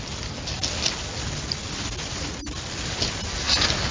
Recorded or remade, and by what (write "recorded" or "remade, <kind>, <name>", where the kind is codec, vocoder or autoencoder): recorded